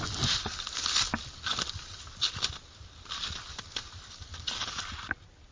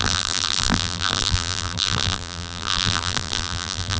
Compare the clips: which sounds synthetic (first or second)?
second